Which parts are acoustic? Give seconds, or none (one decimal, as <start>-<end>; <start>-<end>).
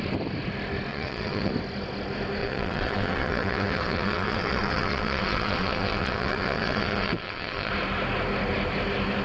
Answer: 0.0-0.9; 1.5-2.4; 7.7-9.2